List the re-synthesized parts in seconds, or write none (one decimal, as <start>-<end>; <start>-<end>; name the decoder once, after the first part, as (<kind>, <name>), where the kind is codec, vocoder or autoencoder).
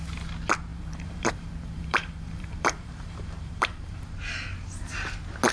0.7-4.0 (vocoder, BigVGAN v2)